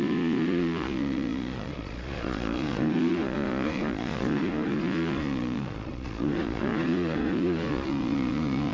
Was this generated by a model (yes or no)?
yes